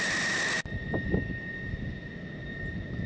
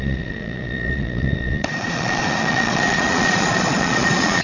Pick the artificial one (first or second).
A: second